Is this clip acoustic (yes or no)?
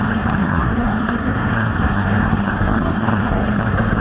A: no